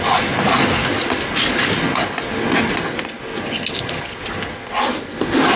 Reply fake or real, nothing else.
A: real